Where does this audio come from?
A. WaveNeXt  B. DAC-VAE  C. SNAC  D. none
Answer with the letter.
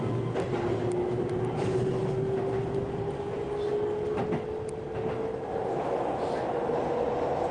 D